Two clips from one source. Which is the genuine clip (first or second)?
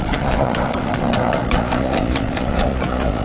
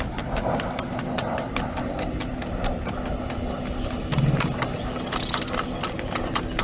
second